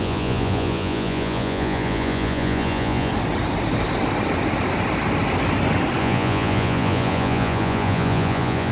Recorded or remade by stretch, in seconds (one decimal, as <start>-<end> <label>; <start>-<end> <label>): 0.0-3.1 remade; 3.1-6.0 recorded; 6.0-8.7 remade